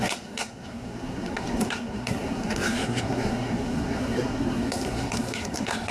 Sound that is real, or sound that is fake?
fake